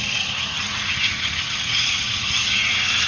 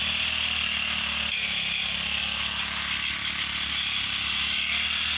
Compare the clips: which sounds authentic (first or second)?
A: second